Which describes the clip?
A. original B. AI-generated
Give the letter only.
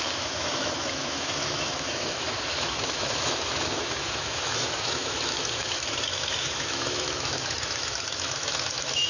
B